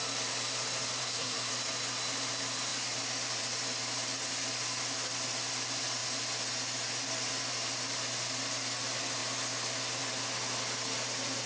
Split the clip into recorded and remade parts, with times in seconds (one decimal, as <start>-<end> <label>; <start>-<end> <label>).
0.0-1.0 recorded; 1.0-1.5 remade; 1.5-11.5 recorded